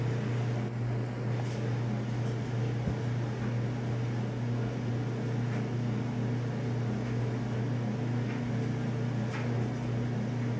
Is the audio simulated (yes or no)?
no